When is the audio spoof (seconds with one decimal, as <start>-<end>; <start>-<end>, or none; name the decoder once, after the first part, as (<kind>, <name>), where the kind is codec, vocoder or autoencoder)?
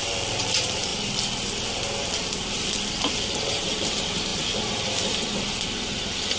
0.0-0.9 (vocoder, BigVGAN v2); 2.0-6.4